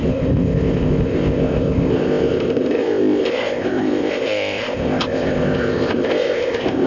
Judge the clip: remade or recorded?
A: remade